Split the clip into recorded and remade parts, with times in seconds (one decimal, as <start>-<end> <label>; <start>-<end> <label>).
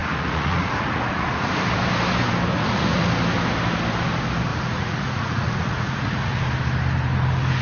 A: 0.0-1.5 remade; 1.5-2.5 recorded; 2.5-3.0 remade; 3.0-4.5 recorded; 4.5-6.4 remade; 6.4-7.6 recorded